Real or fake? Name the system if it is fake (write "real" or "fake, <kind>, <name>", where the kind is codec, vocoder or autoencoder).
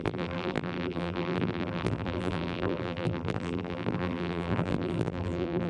fake, vocoder, BigVGAN v2